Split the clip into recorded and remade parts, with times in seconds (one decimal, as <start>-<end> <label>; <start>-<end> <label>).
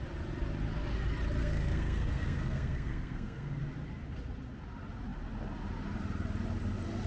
0.0-1.4 recorded; 1.4-3.6 remade; 3.6-7.1 recorded